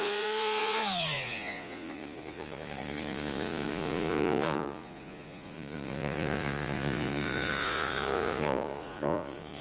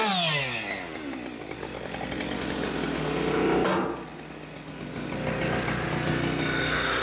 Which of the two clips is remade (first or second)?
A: first